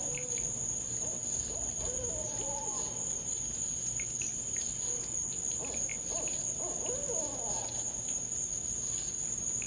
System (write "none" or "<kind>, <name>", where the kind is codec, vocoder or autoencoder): none